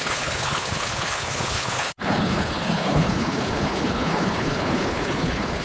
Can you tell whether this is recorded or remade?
remade